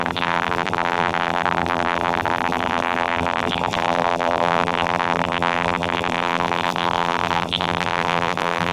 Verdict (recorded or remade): remade